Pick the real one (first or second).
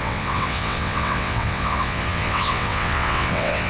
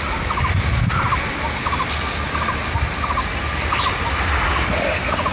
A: second